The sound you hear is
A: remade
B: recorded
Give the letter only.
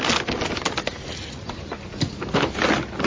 B